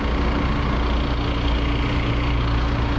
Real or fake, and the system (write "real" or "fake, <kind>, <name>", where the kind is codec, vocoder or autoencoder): real